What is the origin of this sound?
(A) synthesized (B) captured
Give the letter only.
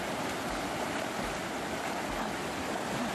B